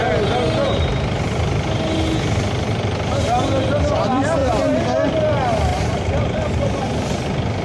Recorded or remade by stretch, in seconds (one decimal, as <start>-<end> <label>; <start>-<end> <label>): 0.0-5.7 recorded; 5.7-7.1 remade; 7.1-7.6 recorded